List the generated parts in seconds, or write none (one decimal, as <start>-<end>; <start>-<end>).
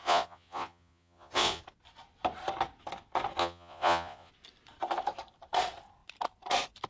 0.0-1.6; 3.4-4.3